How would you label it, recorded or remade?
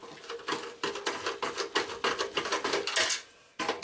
recorded